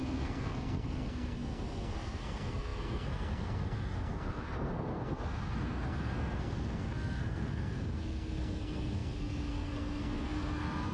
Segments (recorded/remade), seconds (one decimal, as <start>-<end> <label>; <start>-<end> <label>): 0.0-10.9 remade